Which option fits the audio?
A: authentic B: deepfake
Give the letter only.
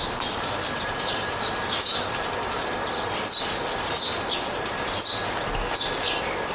A